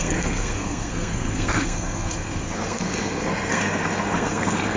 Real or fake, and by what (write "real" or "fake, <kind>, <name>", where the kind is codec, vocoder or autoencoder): fake, codec, SNAC